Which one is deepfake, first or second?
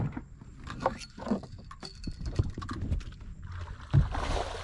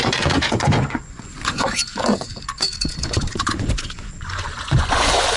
second